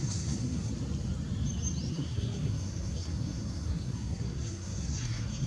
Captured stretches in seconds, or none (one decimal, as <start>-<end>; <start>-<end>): 0.7-1.9